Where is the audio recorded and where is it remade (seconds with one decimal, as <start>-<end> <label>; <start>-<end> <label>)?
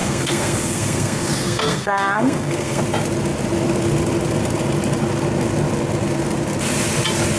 0.0-2.8 remade; 2.8-7.4 recorded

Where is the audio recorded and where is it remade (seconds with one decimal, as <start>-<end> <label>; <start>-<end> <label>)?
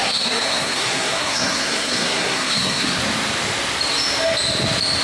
0.0-3.0 remade; 3.0-5.0 recorded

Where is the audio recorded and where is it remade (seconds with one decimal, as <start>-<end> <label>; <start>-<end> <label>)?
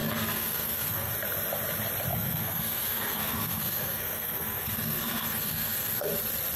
0.0-1.1 remade; 1.1-2.1 recorded; 2.1-6.1 remade; 6.1-6.6 recorded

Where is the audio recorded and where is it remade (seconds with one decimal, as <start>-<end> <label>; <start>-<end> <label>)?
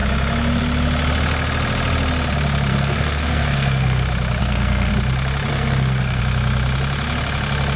0.0-2.7 recorded; 2.7-4.0 remade; 4.0-4.4 recorded; 4.4-4.9 remade; 4.9-5.5 recorded; 5.5-6.2 remade; 6.2-7.8 recorded